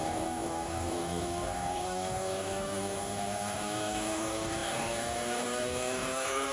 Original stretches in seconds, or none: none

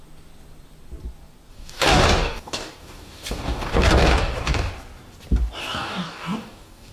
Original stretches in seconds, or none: 0.0-1.5; 4.7-5.6

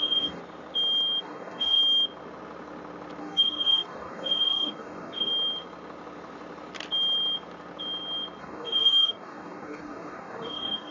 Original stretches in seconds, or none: 0.4-1.2; 1.8-3.2; 5.3-8.4

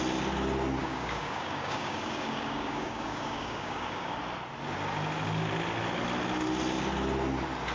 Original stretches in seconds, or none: 0.0-0.8; 4.2-7.7

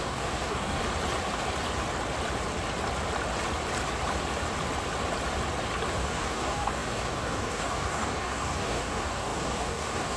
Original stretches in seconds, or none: 0.8-5.9

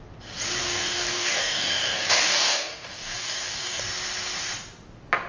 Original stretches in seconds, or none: 0.0-0.6; 3.8-5.3

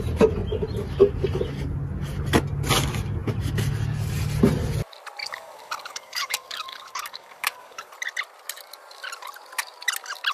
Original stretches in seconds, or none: 0.0-5.2; 7.9-10.3